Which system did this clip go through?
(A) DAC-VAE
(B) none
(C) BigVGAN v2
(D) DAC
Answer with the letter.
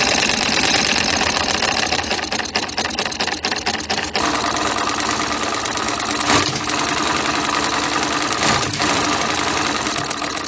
B